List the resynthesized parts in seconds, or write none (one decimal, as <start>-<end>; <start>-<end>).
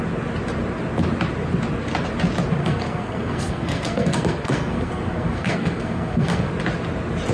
2.6-6.5